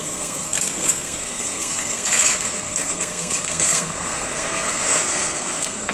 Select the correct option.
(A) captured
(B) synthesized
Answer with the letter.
B